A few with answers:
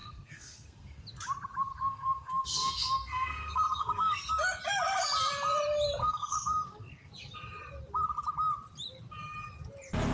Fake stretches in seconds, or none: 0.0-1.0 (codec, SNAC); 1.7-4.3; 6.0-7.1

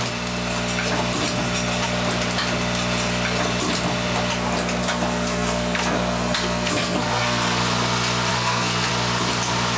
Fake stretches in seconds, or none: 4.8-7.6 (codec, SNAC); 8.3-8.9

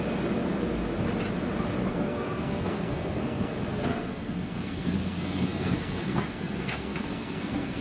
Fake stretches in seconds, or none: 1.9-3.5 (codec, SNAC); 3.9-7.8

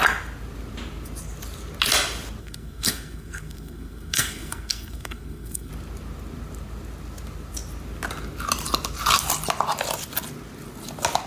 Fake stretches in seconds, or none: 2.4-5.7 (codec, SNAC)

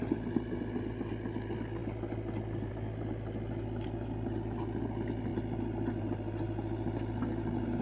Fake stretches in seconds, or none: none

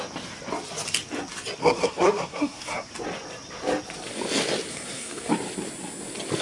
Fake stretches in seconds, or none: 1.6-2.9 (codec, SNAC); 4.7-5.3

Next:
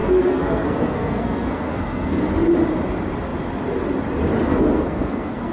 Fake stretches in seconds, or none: 0.0-2.2 (codec, SNAC); 4.5-5.5